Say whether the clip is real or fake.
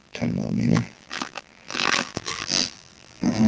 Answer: fake